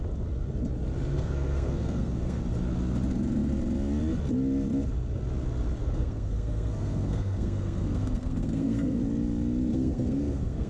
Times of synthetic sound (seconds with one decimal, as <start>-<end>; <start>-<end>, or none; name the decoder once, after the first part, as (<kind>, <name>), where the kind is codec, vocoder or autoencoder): 1.1-2.4 (codec, SNAC); 5.8-9.0; 9.7-10.7